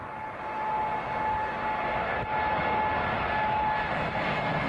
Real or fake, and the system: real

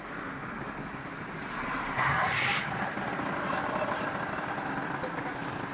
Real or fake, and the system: real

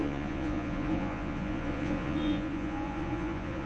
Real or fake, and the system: fake, vocoder, Vocos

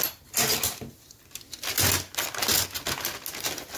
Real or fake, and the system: real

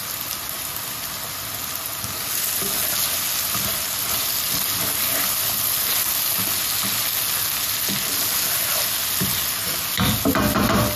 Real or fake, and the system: real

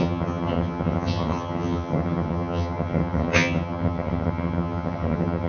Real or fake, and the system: fake, vocoder, HiFi-GAN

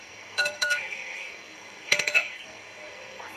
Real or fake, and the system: fake, codec, SNAC